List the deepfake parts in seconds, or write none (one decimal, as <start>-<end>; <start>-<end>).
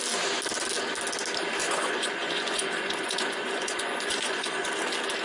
1.6-4.7